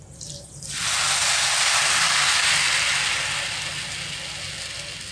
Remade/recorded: recorded